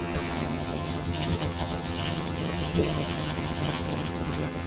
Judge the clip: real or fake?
fake